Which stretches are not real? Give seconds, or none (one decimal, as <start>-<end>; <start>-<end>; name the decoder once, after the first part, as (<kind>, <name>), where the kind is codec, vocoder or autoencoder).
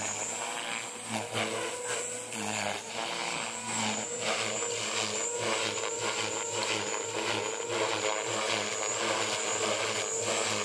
none